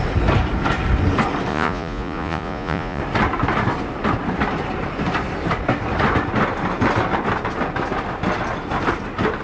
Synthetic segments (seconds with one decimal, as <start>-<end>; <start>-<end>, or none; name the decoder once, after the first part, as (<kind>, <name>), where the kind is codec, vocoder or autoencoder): 1.5-3.0 (vocoder, Vocos)